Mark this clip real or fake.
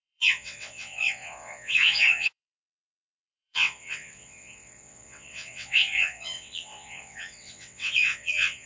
fake